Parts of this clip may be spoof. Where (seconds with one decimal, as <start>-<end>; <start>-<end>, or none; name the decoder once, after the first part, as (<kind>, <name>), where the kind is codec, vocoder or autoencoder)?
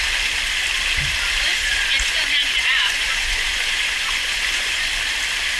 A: 1.5-4.9 (vocoder, Vocos)